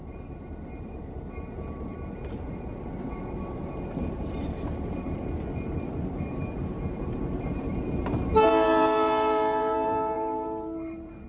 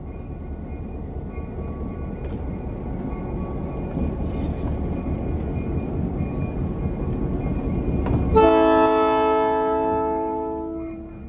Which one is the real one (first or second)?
second